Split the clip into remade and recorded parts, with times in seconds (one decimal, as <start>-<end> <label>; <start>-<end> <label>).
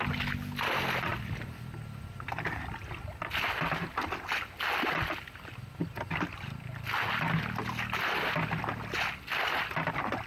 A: 0.0-10.3 recorded